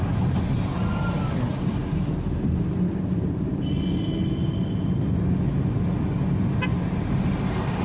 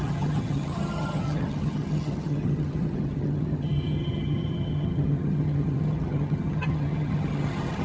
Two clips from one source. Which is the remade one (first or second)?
second